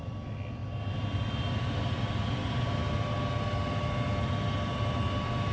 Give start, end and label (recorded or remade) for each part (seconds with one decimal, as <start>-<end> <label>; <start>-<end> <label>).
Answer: 0.0-5.5 recorded